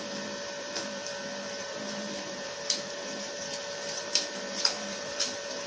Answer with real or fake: fake